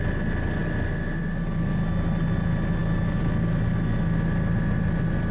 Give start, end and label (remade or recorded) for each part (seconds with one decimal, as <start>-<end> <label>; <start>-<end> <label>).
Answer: 0.0-5.3 recorded